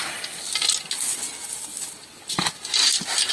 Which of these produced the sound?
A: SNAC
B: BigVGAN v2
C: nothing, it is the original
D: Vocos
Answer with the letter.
C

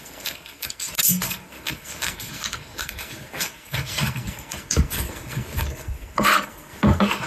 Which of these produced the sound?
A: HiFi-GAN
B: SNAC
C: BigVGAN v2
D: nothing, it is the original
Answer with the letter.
B